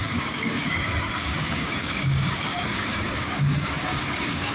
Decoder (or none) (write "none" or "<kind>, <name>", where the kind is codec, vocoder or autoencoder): codec, DAC